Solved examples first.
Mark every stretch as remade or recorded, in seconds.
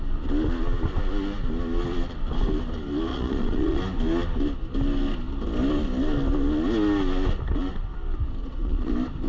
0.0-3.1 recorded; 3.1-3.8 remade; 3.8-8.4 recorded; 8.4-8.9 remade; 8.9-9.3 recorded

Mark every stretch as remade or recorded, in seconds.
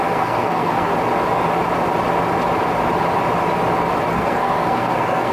0.0-0.9 remade; 0.9-4.1 recorded; 4.1-5.3 remade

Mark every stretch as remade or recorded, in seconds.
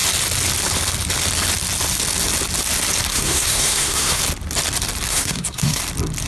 0.0-3.1 recorded; 3.1-4.2 remade; 4.2-5.1 recorded; 5.1-5.8 remade; 5.8-6.3 recorded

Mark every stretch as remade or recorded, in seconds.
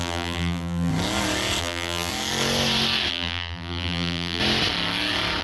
0.0-0.9 remade; 0.9-1.6 recorded; 1.6-2.1 remade; 2.1-3.1 recorded; 3.1-4.4 remade; 4.4-5.4 recorded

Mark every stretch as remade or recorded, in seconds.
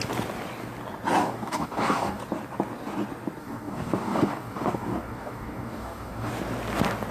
0.0-1.2 recorded; 1.2-2.2 remade; 2.2-3.4 recorded; 3.4-6.3 remade; 6.3-7.1 recorded